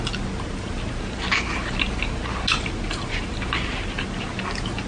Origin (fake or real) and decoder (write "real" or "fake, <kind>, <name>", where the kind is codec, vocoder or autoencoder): real